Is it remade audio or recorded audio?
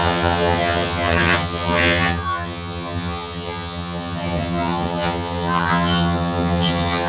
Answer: remade